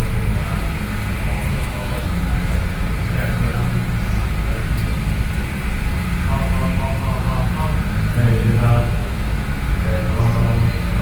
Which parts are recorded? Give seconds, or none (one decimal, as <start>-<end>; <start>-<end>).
0.0-1.5; 2.2-9.0; 10.2-11.0